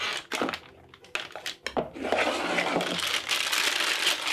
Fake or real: real